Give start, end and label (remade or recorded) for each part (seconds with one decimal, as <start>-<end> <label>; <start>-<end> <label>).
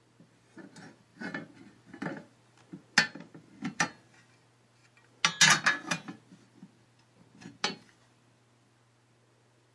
0.0-9.7 recorded